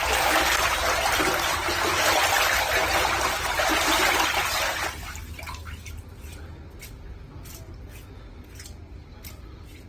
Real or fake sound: real